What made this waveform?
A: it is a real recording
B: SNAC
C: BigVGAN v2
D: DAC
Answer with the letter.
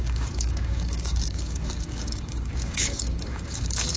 D